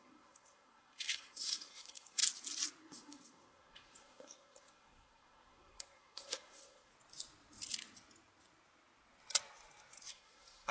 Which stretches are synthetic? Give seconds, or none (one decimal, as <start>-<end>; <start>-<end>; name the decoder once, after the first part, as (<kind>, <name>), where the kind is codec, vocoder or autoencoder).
0.0-2.2 (codec, SNAC); 2.8-6.9; 10.1-10.7